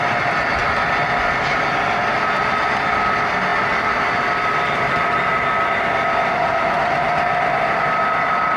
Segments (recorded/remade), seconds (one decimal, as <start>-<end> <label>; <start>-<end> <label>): 0.0-8.6 recorded

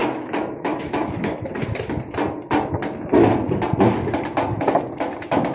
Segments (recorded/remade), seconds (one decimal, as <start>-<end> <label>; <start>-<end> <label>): 0.0-1.5 remade; 1.5-5.5 recorded

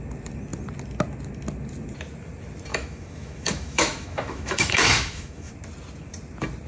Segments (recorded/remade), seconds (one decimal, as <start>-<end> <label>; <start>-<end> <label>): 0.0-2.7 recorded; 2.7-5.5 remade; 5.5-6.7 recorded